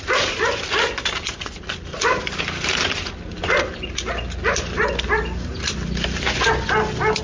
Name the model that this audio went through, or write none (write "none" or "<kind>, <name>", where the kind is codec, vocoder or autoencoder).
none